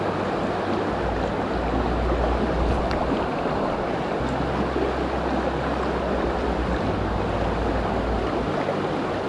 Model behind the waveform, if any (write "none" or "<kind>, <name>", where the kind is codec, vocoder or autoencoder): none